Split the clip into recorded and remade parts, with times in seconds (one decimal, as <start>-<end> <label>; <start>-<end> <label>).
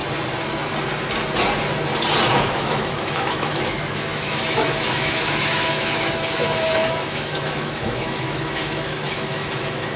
0.0-2.4 recorded; 2.4-10.0 remade